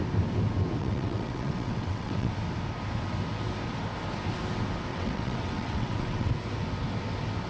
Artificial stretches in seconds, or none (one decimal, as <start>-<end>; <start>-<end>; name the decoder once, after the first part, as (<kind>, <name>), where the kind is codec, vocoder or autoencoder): 0.8-2.3 (vocoder, WaveNeXt); 4.9-6.3